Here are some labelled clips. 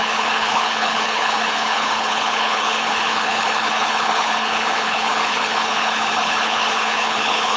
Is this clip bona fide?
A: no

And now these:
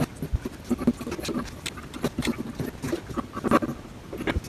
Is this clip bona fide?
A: yes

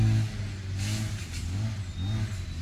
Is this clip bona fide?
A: yes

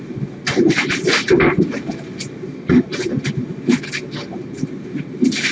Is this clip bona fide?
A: yes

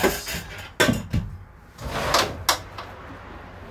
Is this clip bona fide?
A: yes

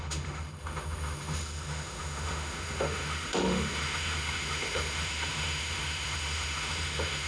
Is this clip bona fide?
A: no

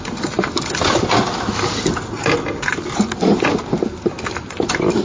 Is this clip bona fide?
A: yes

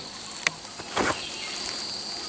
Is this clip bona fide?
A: yes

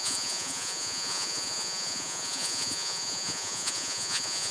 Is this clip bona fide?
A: no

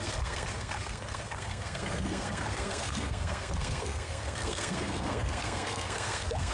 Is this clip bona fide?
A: no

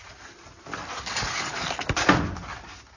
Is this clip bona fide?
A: yes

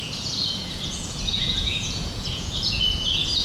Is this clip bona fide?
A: no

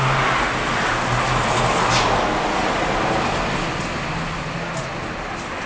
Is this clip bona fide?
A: yes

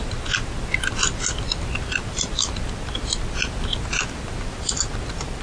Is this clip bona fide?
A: yes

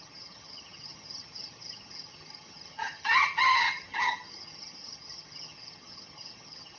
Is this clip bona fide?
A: no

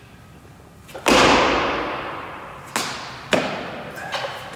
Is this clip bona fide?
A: yes